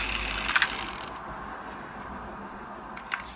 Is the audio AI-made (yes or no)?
no